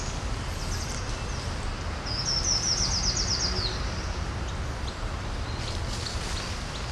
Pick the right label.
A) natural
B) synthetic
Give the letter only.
A